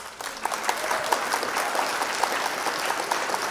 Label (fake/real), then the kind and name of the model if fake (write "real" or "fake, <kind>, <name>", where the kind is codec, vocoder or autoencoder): real